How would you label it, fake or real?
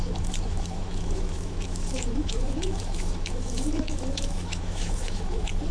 fake